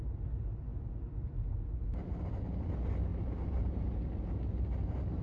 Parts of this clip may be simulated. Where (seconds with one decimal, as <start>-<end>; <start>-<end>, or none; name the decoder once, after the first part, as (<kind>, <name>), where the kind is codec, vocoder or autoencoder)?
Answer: 3.1-4.0 (vocoder, BigVGAN v2)